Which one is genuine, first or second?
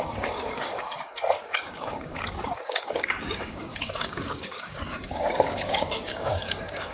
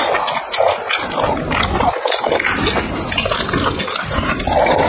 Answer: second